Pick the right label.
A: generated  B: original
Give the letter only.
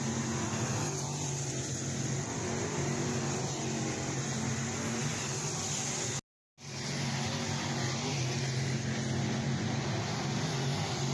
B